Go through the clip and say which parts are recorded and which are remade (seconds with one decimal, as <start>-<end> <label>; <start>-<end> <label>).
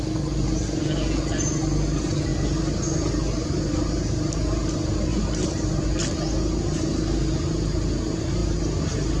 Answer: 0.0-5.1 recorded; 5.1-5.9 remade; 5.9-9.2 recorded